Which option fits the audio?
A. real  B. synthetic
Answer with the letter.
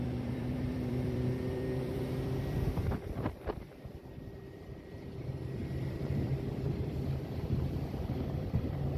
B